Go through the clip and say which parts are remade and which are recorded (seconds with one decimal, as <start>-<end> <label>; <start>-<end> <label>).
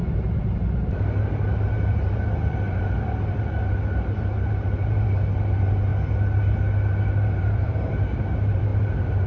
0.0-5.9 remade; 5.9-7.4 recorded; 7.4-9.3 remade